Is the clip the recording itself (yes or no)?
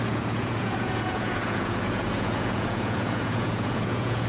no